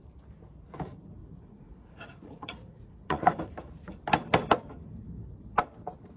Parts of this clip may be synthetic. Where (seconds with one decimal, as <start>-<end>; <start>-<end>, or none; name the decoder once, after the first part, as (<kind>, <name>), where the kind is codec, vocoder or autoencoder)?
1.2-3.4 (vocoder, Vocos)